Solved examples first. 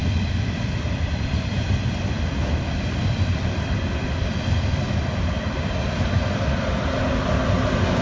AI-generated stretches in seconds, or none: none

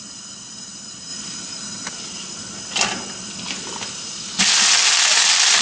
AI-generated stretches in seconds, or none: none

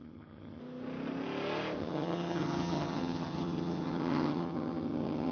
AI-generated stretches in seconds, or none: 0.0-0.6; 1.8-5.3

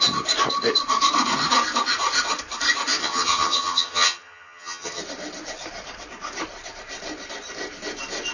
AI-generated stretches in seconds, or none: 3.0-5.0

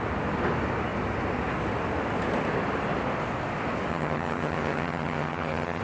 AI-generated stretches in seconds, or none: 3.9-5.8

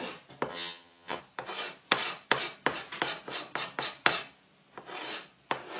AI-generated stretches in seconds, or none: 0.5-1.2